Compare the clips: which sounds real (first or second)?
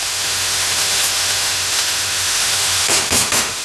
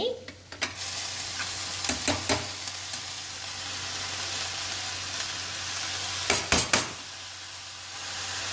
second